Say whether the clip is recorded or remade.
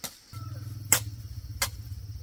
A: recorded